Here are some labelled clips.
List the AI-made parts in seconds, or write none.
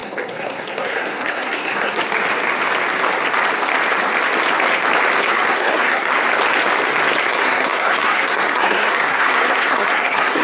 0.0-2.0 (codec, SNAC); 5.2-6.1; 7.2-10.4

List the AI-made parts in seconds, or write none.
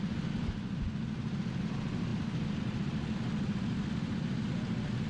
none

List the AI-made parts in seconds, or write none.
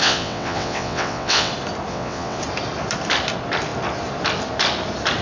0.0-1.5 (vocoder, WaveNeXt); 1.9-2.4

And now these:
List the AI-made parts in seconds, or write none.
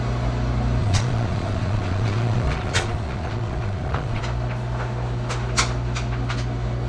0.8-4.2 (vocoder, Vocos)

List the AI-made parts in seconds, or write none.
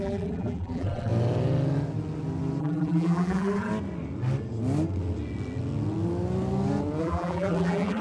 0.0-1.1 (vocoder, BigVGAN v2); 2.6-3.7; 7.0-8.0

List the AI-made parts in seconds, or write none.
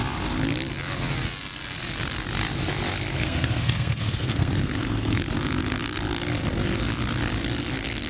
3.1-5.2 (codec, SNAC)